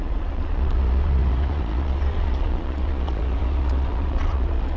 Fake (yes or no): yes